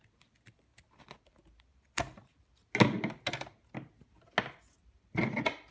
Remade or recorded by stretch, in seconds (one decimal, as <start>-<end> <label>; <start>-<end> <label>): 0.0-5.7 recorded